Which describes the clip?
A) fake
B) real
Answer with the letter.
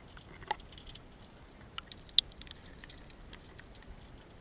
B